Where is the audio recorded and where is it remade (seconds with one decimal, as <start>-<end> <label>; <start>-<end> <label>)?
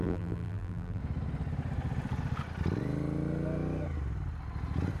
0.0-1.0 remade; 1.0-5.0 recorded